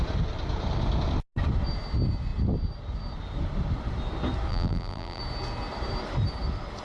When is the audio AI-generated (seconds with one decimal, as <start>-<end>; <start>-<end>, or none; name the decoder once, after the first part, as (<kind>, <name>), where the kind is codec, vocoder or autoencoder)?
4.5-5.2 (vocoder, BigVGAN v2)